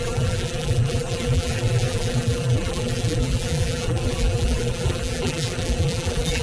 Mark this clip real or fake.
fake